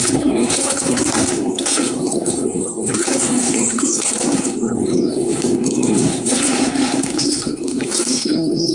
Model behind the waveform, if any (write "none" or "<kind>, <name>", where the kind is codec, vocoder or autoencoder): codec, SNAC